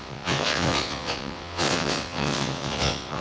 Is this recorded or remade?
remade